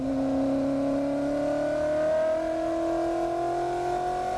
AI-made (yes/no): no